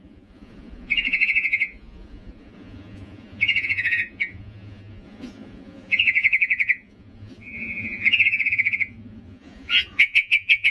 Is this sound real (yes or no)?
no